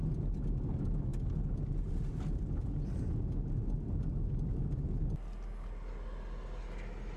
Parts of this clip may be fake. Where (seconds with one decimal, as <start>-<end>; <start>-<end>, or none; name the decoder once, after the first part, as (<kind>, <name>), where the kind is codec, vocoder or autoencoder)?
none

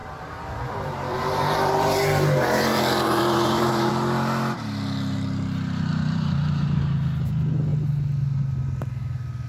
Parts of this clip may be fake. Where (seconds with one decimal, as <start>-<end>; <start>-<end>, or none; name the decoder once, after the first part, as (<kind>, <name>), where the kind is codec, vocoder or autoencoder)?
0.0-3.9 (vocoder, BigVGAN v2); 5.9-6.9

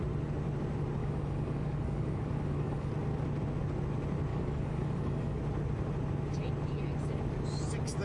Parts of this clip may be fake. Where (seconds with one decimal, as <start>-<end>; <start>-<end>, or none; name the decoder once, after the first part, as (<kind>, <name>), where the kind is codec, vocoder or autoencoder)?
1.0-2.9 (codec, DAC); 4.3-5.4

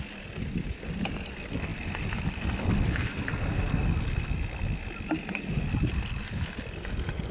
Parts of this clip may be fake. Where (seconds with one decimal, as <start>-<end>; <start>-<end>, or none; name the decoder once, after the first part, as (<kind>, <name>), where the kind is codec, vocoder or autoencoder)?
none

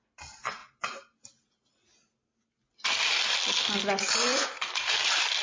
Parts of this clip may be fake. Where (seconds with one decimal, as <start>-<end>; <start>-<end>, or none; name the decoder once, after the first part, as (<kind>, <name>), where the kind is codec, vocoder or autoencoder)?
none

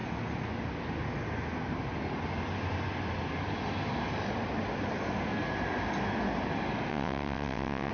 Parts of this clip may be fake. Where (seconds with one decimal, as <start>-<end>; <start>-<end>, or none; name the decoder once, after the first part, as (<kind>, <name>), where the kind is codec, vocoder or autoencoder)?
6.9-7.9 (vocoder, WaveNeXt)

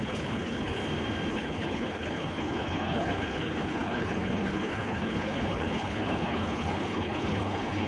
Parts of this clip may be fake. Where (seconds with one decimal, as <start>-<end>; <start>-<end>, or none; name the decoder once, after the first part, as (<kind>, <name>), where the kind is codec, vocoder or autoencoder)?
0.0-0.8 (codec, HILCodec); 1.3-7.9